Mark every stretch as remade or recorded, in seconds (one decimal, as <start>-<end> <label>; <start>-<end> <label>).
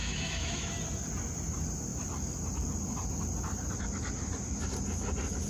0.0-0.7 remade; 0.7-5.5 recorded